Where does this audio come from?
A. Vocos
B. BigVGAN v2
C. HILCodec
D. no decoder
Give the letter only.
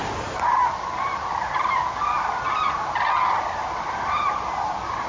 D